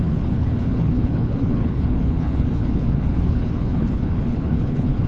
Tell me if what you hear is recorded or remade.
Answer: remade